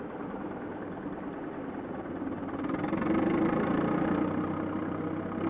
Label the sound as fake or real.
fake